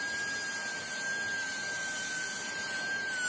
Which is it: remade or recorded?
recorded